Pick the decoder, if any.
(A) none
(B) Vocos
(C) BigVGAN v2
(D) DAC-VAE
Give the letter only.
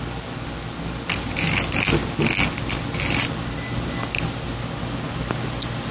A